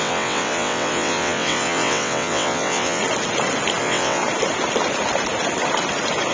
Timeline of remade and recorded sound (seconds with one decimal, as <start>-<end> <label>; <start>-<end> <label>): 0.0-3.0 remade; 3.0-3.8 recorded; 3.8-4.2 remade; 4.2-6.3 recorded